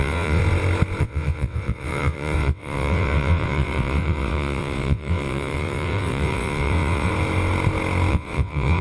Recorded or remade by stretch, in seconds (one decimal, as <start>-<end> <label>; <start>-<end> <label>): 0.0-0.4 remade; 0.4-1.0 recorded; 1.0-7.1 remade; 7.1-8.1 recorded; 8.1-8.8 remade